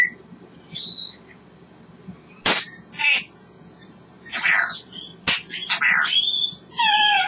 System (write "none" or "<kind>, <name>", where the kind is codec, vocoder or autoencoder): none